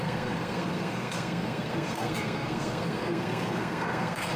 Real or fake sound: fake